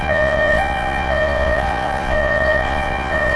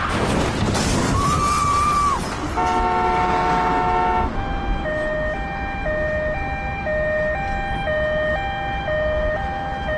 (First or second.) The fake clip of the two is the first